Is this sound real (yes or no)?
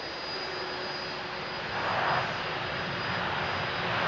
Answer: yes